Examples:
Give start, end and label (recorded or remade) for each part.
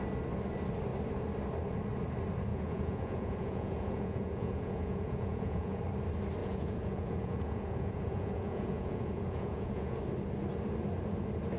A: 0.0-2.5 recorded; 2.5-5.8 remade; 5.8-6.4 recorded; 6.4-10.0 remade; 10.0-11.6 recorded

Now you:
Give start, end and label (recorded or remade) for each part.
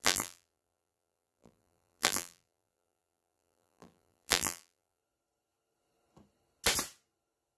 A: 0.0-5.0 remade; 5.0-7.6 recorded